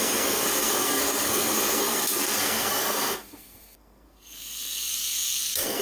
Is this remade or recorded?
remade